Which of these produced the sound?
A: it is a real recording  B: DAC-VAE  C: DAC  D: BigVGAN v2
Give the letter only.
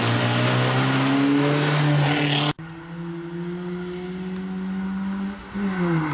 A